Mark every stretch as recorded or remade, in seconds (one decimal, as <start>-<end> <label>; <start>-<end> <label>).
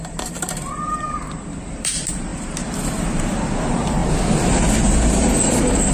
0.0-4.0 remade; 4.0-4.9 recorded; 4.9-5.9 remade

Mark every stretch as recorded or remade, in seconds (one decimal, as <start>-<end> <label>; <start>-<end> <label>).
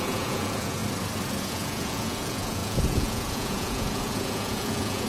0.0-0.8 remade; 0.8-1.4 recorded; 1.4-5.1 remade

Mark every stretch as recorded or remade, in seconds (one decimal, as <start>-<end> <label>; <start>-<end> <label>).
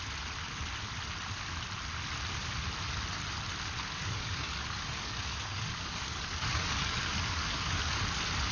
0.0-4.0 recorded; 4.0-8.0 remade; 8.0-8.5 recorded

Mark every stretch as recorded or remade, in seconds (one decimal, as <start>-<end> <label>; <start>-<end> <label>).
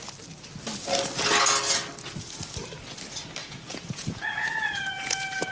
0.0-3.4 recorded; 3.4-5.5 remade